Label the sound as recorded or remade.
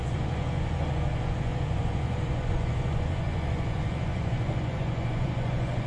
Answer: remade